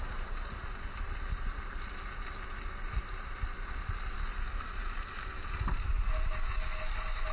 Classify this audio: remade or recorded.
recorded